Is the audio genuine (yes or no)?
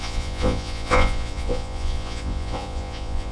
no